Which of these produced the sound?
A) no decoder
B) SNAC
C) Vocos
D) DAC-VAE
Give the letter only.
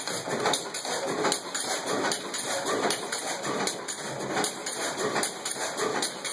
A